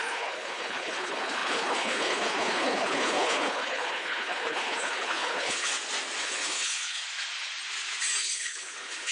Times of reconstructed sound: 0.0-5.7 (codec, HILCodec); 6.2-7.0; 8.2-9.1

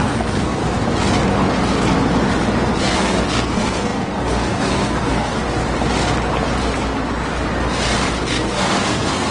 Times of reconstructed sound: 0.0-0.6 (codec, SNAC); 2.8-5.3; 8.3-9.3

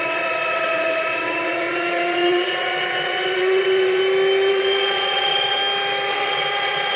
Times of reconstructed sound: 0.0-4.0 (vocoder, WaveNeXt); 4.5-5.6; 6.1-7.0

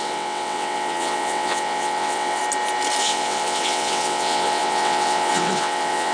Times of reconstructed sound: 0.0-2.4 (vocoder, WaveNeXt); 3.0-6.1

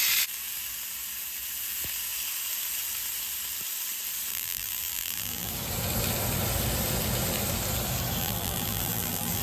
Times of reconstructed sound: 4.3-5.5 (vocoder, BigVGAN v2); 8.2-9.4

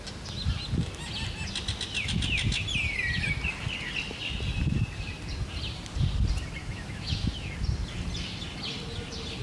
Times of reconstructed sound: 6.6-7.3 (autoencoder, DAC-VAE)